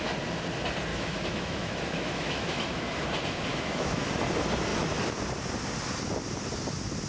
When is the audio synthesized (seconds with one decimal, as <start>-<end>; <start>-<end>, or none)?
0.9-2.8; 3.5-4.1